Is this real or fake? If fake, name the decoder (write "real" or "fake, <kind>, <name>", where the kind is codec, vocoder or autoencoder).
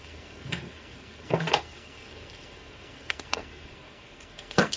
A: fake, codec, SNAC